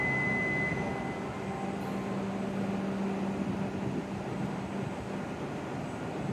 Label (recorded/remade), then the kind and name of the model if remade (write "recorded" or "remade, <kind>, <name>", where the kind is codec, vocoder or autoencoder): recorded